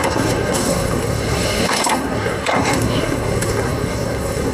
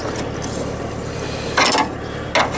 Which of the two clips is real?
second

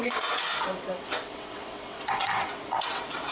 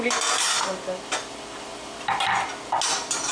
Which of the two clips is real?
second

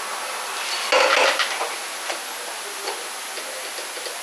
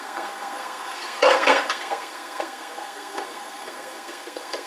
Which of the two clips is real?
first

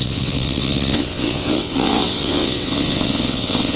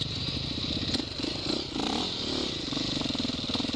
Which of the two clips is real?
second